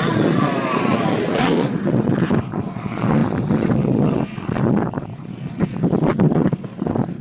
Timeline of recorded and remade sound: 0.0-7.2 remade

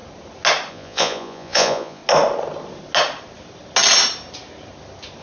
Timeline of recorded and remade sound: 0.0-0.7 recorded; 0.7-2.0 remade; 2.0-5.2 recorded